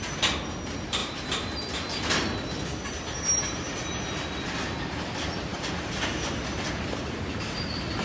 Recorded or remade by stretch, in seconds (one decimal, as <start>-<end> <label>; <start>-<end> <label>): 0.0-5.5 recorded; 5.5-6.7 remade; 6.7-8.0 recorded